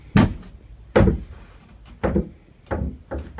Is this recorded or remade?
remade